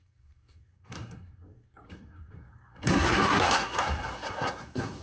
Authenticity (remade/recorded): remade